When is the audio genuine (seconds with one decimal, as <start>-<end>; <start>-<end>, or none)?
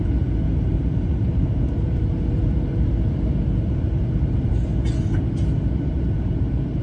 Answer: 4.7-5.5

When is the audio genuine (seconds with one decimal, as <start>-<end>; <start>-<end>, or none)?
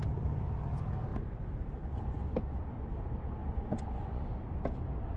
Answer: 0.0-3.4; 4.3-5.2